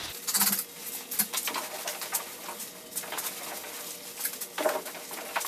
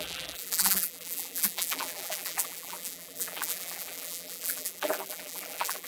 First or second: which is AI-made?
second